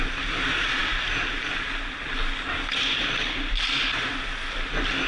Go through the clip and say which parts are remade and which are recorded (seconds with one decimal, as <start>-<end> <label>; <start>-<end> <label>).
0.0-5.1 recorded